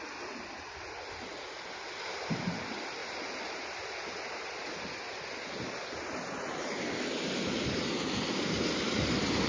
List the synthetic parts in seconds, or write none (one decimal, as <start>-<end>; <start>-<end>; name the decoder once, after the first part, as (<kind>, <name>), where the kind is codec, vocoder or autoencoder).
none